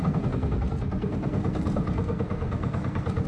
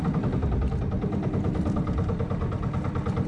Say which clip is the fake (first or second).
first